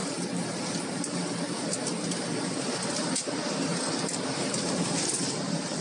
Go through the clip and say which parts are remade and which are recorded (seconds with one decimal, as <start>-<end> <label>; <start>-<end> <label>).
0.0-5.8 recorded